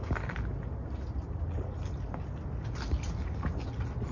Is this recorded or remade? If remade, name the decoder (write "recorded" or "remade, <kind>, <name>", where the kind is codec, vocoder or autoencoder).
recorded